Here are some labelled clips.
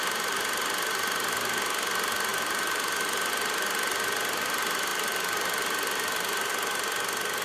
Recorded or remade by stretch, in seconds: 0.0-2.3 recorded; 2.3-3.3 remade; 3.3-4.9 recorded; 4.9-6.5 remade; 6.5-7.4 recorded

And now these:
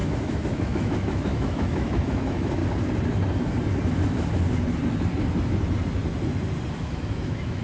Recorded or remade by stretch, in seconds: 0.0-2.6 remade; 2.6-6.7 recorded; 6.7-7.6 remade